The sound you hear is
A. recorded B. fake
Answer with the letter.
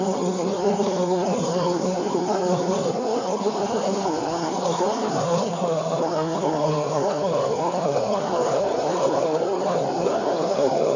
B